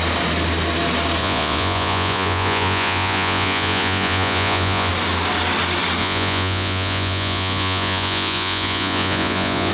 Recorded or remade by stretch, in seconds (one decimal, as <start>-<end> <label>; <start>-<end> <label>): 0.0-1.2 recorded; 1.2-4.9 remade; 4.9-6.0 recorded; 6.0-9.7 remade